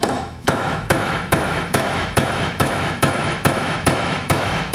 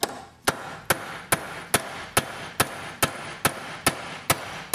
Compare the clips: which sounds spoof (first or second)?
first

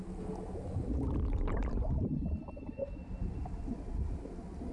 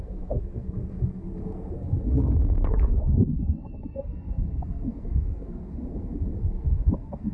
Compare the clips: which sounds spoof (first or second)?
second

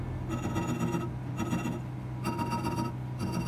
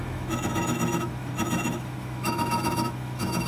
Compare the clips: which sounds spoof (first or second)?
second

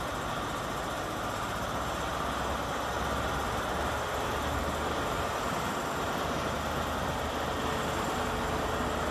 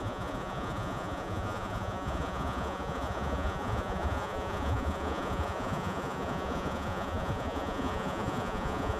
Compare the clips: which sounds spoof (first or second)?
second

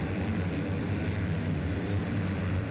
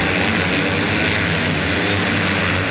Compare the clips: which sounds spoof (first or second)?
first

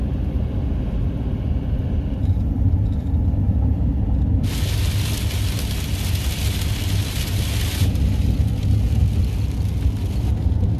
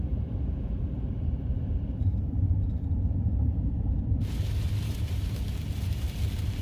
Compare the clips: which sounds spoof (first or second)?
second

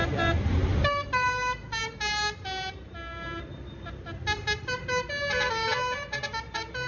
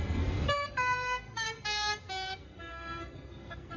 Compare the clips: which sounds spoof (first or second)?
second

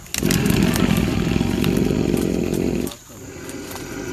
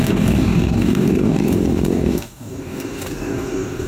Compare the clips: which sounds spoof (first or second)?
second